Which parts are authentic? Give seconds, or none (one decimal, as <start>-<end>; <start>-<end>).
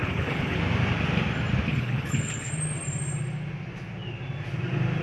0.6-1.7; 2.5-5.0